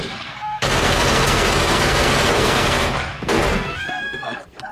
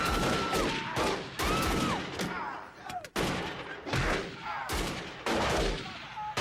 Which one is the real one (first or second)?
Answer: second